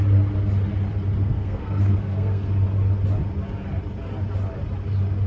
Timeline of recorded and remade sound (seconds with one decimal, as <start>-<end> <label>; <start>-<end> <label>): 0.0-1.2 recorded; 1.2-2.5 remade; 2.5-5.3 recorded